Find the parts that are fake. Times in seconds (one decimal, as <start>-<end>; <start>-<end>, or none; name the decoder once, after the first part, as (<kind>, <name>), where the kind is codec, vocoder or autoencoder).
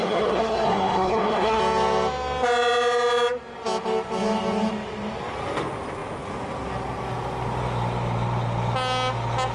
0.0-1.6 (codec, SNAC)